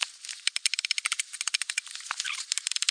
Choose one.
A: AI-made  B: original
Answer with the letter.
B